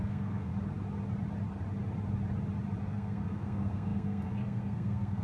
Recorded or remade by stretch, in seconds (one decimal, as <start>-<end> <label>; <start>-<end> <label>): 0.0-0.5 remade; 0.5-2.8 recorded; 2.8-5.2 remade